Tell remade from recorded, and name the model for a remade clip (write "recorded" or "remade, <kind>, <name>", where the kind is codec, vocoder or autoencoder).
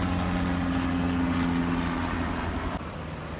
recorded